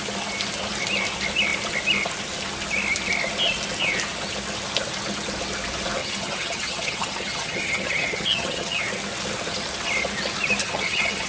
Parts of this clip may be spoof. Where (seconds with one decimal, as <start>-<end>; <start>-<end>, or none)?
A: 6.0-8.8; 10.6-11.3